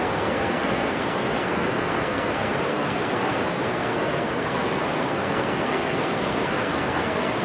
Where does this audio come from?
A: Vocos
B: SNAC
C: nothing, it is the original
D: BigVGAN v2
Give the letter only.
B